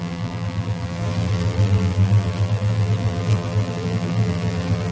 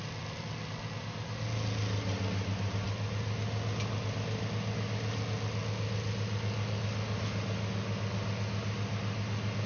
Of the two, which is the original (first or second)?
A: second